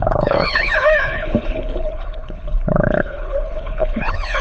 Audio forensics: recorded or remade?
remade